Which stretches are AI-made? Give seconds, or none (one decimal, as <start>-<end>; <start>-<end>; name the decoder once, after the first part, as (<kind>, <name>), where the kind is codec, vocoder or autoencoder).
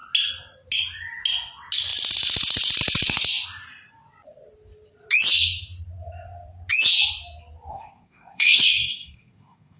7.7-9.8 (codec, SNAC)